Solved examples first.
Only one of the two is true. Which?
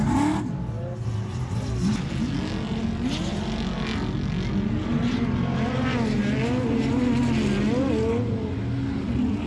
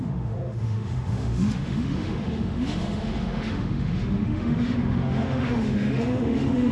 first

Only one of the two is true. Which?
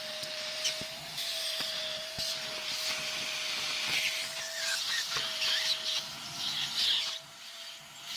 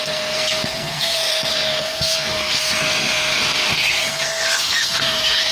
first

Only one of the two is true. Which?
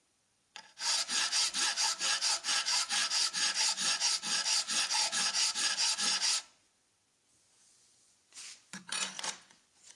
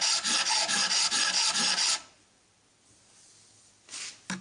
second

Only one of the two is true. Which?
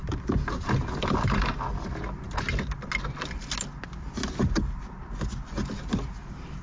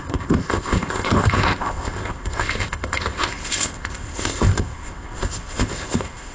first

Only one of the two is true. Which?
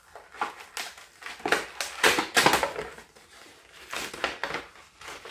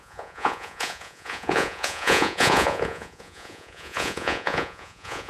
first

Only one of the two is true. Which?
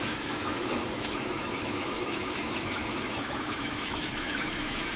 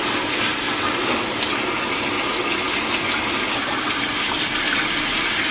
second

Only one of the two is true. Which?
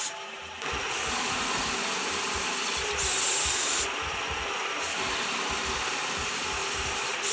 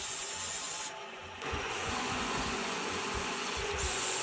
first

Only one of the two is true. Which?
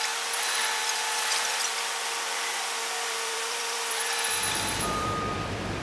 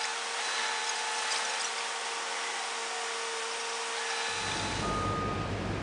second